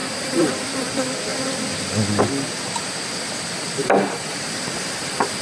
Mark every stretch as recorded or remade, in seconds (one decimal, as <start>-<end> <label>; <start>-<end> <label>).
0.0-0.5 remade; 0.5-3.8 recorded; 3.8-5.4 remade

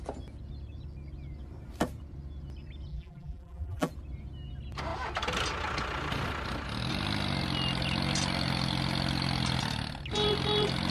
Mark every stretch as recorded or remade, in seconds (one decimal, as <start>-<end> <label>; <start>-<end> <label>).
0.0-2.9 recorded; 2.9-3.9 remade; 3.9-10.9 recorded

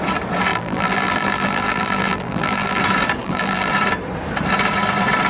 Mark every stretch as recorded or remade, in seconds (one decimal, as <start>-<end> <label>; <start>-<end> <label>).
0.0-0.5 recorded; 0.5-2.8 remade; 2.8-3.2 recorded; 3.2-3.7 remade; 3.7-5.3 recorded

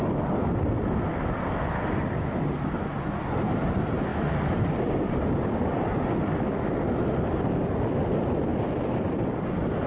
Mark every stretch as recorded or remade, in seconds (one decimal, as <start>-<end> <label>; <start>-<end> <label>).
0.0-9.9 recorded

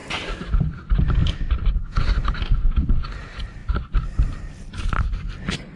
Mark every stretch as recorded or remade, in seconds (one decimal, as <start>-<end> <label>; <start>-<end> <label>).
0.0-0.5 remade; 0.5-1.2 recorded; 1.2-1.7 remade; 1.7-5.8 recorded

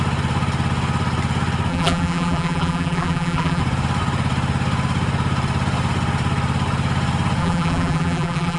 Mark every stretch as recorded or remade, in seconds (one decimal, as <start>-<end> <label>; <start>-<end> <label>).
0.0-1.7 recorded; 1.7-3.6 remade; 3.6-7.4 recorded; 7.4-8.6 remade